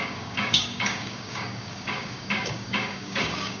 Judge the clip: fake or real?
fake